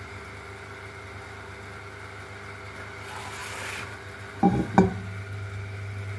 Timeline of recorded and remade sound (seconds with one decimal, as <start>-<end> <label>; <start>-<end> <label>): 0.0-6.2 recorded